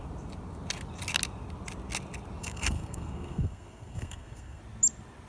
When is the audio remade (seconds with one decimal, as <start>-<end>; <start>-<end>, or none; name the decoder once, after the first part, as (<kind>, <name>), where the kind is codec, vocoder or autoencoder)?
2.4-4.6 (codec, SNAC)